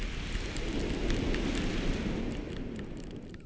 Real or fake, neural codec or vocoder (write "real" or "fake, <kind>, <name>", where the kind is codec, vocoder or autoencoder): real